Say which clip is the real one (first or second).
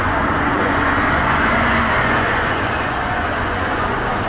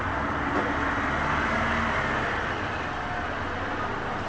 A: second